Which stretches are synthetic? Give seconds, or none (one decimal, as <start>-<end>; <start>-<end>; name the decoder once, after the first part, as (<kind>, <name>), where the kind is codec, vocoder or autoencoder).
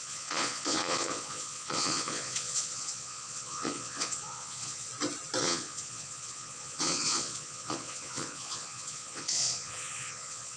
0.0-4.9 (vocoder, Vocos); 5.4-10.6